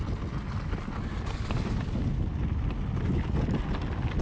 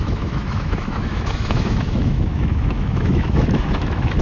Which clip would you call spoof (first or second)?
second